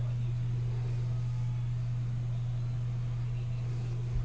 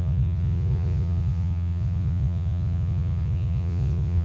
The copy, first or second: second